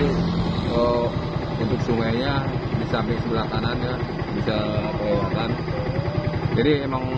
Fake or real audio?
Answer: real